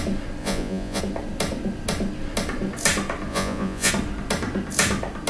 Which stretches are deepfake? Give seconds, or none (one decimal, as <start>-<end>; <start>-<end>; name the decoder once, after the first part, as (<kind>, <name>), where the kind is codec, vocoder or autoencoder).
0.4-1.0 (vocoder, Vocos); 3.3-3.9